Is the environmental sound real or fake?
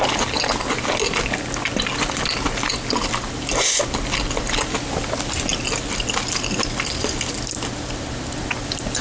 real